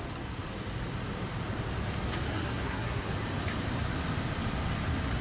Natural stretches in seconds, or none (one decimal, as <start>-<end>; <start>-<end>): 0.0-2.3; 3.1-5.2